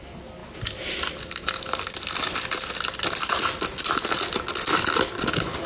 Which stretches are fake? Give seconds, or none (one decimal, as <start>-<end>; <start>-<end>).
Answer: none